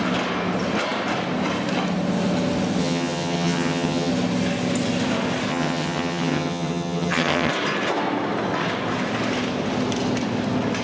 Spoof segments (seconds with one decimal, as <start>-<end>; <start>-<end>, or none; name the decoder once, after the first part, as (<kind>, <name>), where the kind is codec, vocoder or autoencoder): 2.8-4.1 (vocoder, HiFi-GAN); 5.5-7.5